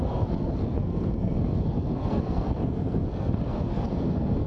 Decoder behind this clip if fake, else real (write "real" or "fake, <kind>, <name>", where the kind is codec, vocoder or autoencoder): fake, codec, SNAC